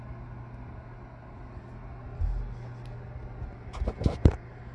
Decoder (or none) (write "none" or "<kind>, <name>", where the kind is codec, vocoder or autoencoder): none